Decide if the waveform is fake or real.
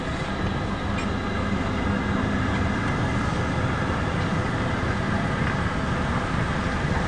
real